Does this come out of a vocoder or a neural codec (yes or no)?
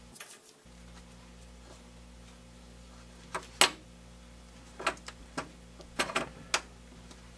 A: no